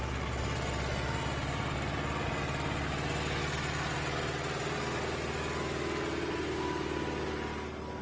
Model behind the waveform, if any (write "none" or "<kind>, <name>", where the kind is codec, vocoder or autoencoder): none